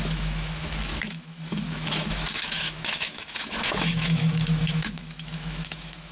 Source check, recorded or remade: remade